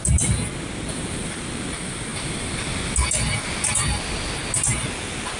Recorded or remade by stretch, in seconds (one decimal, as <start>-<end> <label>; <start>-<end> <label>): 0.0-5.4 recorded

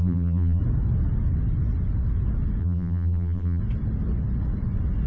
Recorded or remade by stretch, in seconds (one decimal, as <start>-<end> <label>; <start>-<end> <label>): 0.0-0.6 remade; 0.6-2.6 recorded; 2.6-3.6 remade; 3.6-5.1 recorded

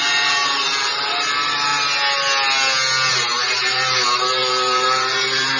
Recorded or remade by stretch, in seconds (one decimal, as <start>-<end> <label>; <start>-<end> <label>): 0.0-1.7 remade; 1.7-3.1 recorded; 3.1-5.6 remade

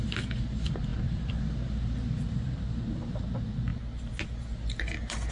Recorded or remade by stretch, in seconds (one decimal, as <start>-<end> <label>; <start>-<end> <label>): 0.0-0.9 recorded; 0.9-3.2 remade; 3.2-5.3 recorded